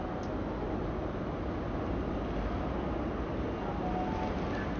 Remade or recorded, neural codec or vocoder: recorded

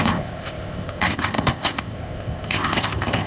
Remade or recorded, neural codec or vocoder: remade, codec, ZipCodec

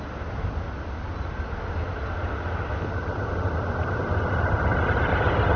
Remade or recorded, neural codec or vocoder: recorded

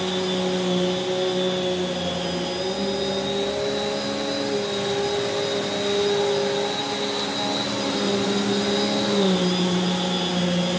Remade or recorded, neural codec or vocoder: recorded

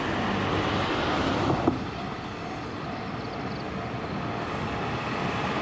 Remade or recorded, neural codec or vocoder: recorded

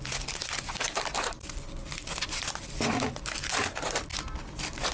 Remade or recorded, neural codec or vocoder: recorded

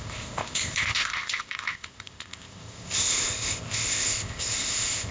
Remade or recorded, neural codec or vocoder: remade, codec, ZipCodec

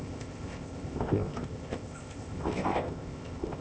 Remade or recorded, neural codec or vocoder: remade, codec, ZipCodec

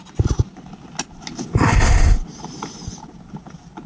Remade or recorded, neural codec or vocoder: recorded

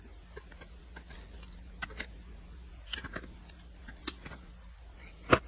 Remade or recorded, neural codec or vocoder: recorded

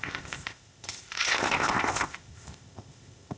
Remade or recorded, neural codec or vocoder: remade, codec, ZipCodec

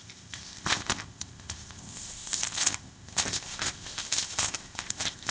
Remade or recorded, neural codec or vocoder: remade, codec, ZipCodec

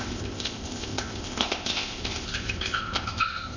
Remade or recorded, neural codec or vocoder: remade, codec, ZipCodec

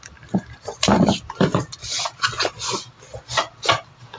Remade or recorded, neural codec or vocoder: recorded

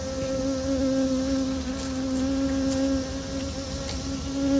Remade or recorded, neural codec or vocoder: recorded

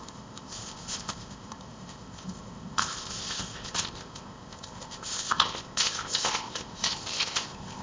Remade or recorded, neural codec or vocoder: remade, codec, ZipCodec